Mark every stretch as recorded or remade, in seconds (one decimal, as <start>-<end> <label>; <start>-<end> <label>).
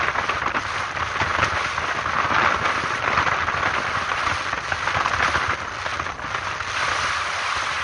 0.0-7.8 recorded